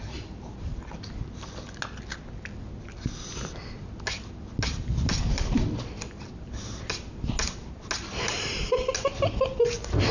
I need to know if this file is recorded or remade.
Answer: recorded